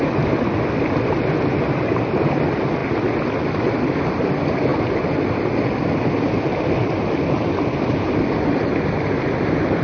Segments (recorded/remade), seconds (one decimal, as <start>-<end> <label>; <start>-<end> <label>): 0.0-9.8 recorded

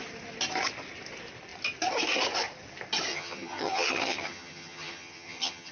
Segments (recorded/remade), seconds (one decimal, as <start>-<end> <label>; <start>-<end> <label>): 0.0-3.1 recorded; 3.1-5.7 remade

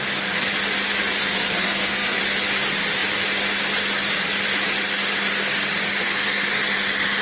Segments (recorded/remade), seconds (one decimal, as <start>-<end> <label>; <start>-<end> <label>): 0.0-1.2 recorded; 1.2-2.2 remade; 2.2-6.0 recorded; 6.0-6.5 remade; 6.5-7.2 recorded